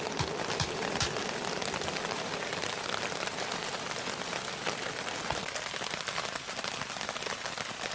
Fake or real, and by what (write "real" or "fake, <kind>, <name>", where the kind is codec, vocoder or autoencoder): real